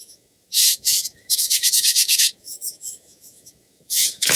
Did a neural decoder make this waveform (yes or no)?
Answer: yes